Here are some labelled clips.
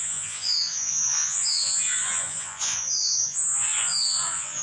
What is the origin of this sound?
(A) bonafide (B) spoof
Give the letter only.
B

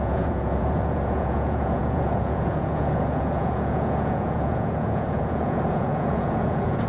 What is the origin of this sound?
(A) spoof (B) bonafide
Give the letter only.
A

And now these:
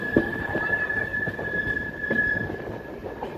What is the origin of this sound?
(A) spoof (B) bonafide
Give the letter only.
B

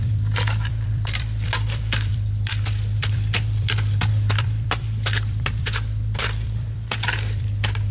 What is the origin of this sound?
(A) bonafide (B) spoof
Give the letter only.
B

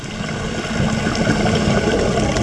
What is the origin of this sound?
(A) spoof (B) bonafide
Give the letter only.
B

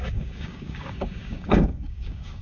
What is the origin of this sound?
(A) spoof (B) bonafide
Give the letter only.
A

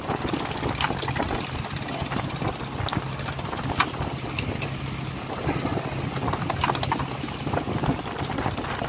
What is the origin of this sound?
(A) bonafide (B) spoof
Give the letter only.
A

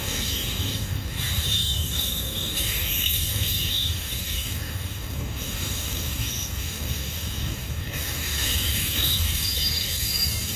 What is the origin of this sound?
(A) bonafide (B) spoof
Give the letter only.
B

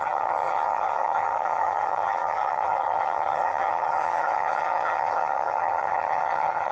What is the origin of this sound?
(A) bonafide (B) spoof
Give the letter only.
B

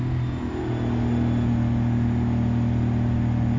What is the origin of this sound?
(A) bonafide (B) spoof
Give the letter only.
A